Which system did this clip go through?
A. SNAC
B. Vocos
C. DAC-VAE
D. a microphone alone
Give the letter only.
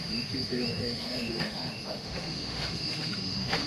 C